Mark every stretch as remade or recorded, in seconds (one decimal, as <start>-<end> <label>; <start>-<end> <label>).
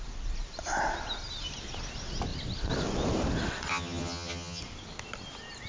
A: 0.0-3.7 recorded; 3.7-4.6 remade; 4.6-5.7 recorded